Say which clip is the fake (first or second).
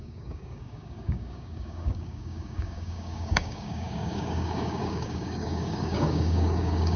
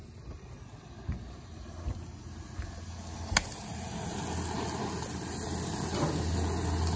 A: first